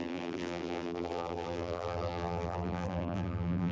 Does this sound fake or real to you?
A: fake